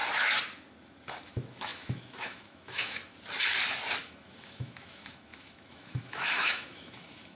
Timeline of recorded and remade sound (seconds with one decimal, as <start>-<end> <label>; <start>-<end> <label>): 0.0-1.2 recorded; 1.2-3.0 remade; 3.0-4.0 recorded; 4.0-7.4 remade